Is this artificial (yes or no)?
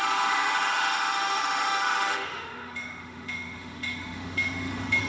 yes